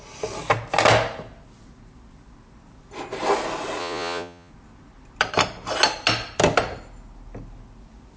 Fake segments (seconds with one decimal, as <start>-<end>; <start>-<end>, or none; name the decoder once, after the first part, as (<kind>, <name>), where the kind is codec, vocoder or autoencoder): 3.8-4.5 (vocoder, Vocos)